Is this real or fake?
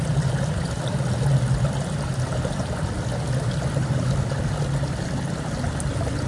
real